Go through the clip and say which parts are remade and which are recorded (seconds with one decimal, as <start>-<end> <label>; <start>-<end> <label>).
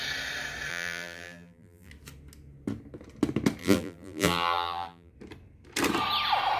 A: 0.0-0.7 recorded; 0.7-1.9 remade; 1.9-3.6 recorded; 3.6-5.1 remade; 5.1-6.6 recorded